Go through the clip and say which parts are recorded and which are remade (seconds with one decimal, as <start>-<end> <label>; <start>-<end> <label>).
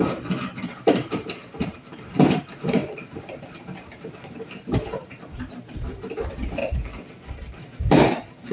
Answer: 0.0-6.6 remade; 6.6-7.5 recorded; 7.5-8.5 remade